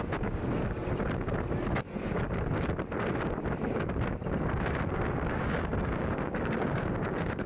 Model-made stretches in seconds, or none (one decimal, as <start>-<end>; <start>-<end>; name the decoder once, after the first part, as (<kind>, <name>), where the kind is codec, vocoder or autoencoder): 0.0-0.4 (codec, DAC); 4.9-7.5